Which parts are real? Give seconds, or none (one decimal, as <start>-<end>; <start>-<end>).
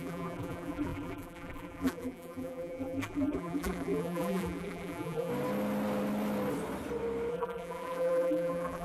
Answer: 5.3-7.3